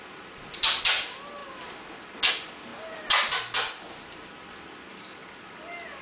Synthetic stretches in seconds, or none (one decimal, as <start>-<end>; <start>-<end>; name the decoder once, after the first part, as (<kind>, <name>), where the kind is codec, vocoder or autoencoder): 0.0-1.4 (vocoder, BigVGAN v2); 2.3-2.7; 3.9-5.2